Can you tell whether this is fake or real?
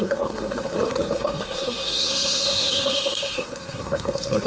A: fake